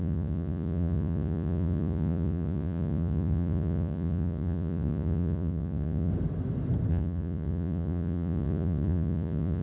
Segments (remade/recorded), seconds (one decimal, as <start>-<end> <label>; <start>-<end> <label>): 0.0-6.1 remade; 6.1-6.9 recorded; 6.9-9.6 remade